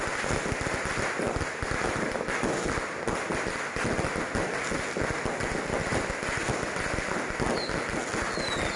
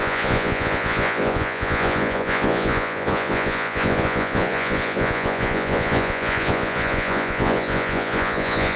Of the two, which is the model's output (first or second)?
second